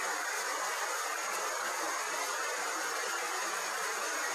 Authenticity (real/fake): fake